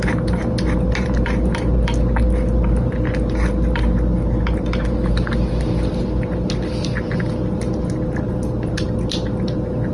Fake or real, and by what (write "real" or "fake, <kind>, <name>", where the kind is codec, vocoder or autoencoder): real